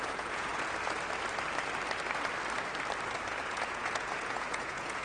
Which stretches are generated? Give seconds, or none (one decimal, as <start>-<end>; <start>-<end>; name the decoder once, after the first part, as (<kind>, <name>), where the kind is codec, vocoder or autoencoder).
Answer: 0.0-0.5 (vocoder, Vocos); 3.5-5.0

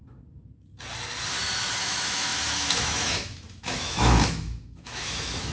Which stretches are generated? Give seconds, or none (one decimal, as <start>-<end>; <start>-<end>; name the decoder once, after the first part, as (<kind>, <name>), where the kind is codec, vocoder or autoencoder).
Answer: 1.8-5.5 (autoencoder, DAC-VAE)

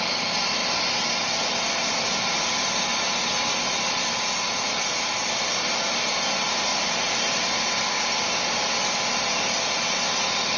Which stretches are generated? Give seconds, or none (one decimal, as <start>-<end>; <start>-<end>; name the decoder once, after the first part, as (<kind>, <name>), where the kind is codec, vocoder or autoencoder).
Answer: 0.6-4.8 (vocoder, BigVGAN v2); 6.7-8.0

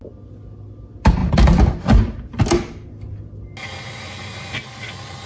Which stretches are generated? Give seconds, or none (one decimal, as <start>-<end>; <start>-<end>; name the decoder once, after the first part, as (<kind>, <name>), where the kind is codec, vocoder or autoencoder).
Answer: none

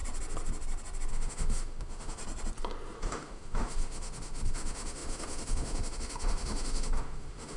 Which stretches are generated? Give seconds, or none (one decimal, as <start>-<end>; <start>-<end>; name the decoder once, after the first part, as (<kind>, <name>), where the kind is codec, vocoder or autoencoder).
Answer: 1.1-2.2 (autoencoder, DAC-VAE); 3.0-7.6

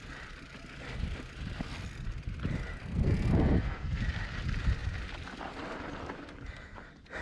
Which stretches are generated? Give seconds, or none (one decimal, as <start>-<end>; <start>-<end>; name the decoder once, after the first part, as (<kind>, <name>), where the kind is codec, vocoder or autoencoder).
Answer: 2.7-4.0 (codec, SNAC)

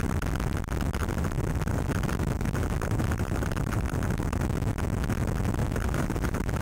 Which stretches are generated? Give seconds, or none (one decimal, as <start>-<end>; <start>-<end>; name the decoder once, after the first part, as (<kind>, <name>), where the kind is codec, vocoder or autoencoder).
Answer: 1.0-4.4 (vocoder, BigVGAN v2); 5.6-6.6